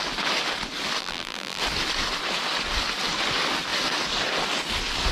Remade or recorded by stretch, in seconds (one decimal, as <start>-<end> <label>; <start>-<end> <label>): 0.0-1.0 recorded; 1.0-1.6 remade; 1.6-5.1 recorded